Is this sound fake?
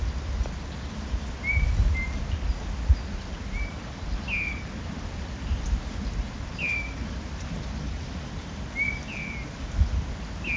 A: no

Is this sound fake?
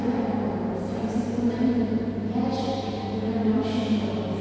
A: no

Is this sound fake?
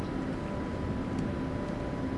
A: no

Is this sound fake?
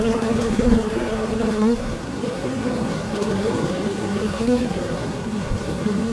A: yes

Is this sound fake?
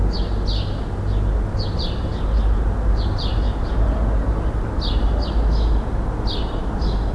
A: no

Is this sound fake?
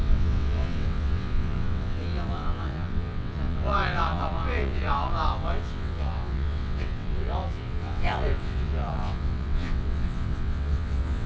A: yes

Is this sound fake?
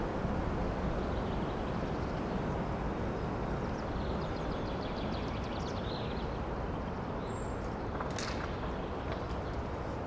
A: no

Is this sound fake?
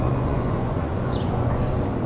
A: yes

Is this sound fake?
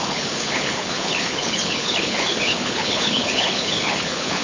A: yes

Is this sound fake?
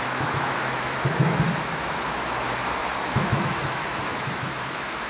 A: yes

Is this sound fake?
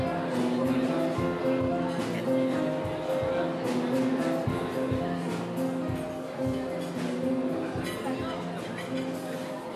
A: no